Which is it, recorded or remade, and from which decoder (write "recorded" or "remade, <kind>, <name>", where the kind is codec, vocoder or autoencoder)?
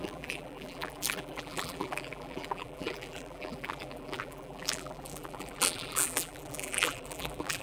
remade, vocoder, BigVGAN v2